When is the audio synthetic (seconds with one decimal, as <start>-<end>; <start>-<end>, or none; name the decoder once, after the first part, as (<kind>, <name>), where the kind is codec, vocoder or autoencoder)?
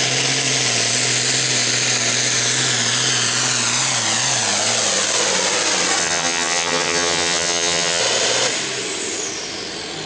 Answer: 6.0-8.0 (vocoder, HiFi-GAN)